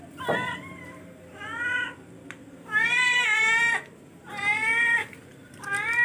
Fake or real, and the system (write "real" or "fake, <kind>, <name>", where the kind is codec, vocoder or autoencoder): real